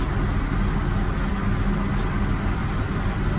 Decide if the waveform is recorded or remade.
recorded